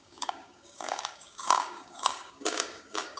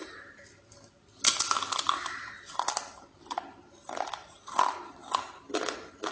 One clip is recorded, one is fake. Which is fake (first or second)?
first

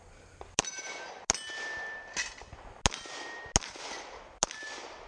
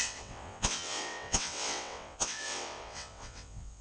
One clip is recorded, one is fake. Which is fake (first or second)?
second